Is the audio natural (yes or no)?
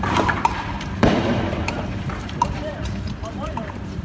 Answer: no